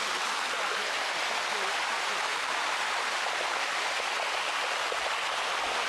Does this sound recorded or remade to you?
recorded